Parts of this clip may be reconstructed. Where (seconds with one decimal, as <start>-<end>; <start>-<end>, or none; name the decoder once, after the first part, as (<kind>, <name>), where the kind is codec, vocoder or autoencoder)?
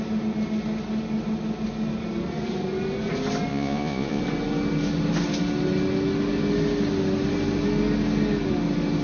3.5-4.2 (vocoder, Vocos)